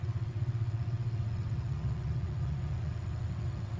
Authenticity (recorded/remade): remade